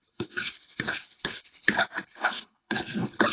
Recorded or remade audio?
remade